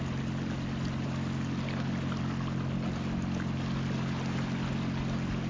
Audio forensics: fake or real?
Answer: real